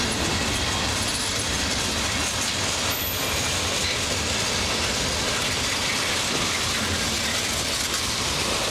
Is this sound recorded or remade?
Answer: recorded